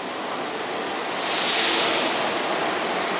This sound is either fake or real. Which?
real